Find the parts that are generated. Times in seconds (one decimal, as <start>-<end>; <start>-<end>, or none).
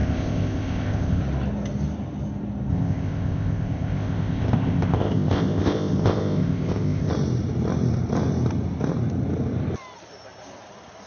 0.0-1.2; 2.7-7.1